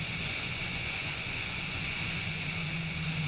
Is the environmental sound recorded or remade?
remade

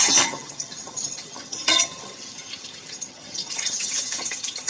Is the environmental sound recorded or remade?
remade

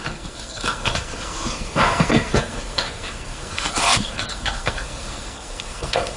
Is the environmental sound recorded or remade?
remade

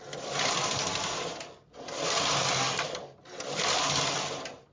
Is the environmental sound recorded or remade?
recorded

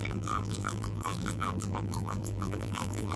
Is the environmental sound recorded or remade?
remade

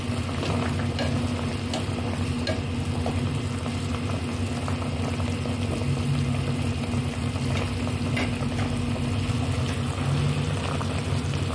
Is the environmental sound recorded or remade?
recorded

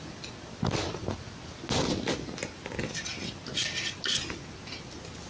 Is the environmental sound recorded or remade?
recorded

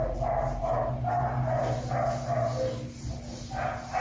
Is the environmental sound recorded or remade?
recorded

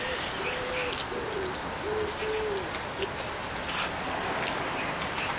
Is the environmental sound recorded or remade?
recorded